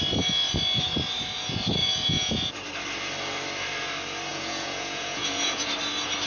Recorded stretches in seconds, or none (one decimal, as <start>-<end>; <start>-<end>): 0.0-1.8; 2.5-4.3; 5.7-6.3